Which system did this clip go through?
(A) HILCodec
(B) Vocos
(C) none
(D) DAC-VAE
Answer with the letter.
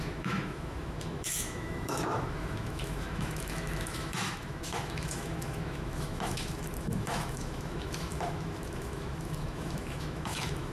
D